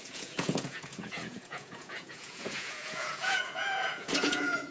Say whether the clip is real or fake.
fake